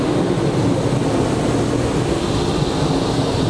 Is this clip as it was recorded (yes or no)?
yes